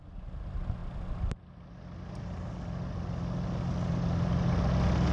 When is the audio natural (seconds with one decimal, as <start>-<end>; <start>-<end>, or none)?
0.0-5.1